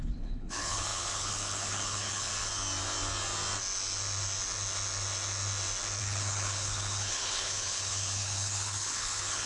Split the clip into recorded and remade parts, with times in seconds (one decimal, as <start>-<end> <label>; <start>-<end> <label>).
0.0-2.3 remade; 2.3-6.0 recorded; 6.0-9.5 remade